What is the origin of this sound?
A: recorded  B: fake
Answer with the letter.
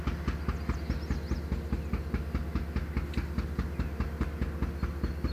A